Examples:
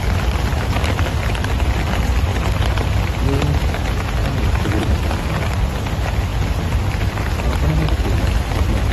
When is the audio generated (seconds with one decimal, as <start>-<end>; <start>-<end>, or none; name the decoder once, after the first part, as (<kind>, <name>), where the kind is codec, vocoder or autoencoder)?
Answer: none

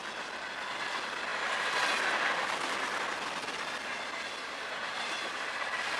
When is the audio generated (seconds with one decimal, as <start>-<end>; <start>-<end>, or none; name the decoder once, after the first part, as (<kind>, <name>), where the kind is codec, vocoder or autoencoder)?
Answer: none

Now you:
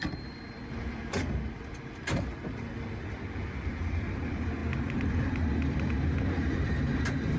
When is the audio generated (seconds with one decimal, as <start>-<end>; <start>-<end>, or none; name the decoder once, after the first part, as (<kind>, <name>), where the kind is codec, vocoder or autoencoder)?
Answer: 0.0-1.0 (vocoder, BigVGAN v2); 3.7-7.4